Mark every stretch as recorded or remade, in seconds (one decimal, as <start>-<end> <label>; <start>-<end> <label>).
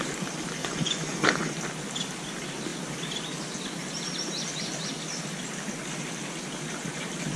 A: 0.0-0.6 recorded; 0.6-1.6 remade; 1.6-7.4 recorded